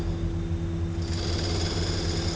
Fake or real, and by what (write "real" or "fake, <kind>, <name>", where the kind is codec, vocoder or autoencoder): real